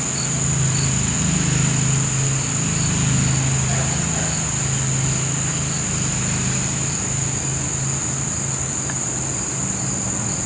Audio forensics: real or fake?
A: real